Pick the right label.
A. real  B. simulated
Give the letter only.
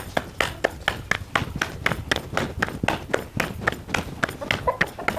A